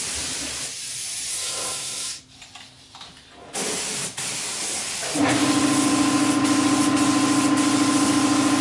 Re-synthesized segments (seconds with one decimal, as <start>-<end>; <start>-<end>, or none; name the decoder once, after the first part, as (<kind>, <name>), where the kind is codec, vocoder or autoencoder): 1.3-2.2 (codec, SNAC)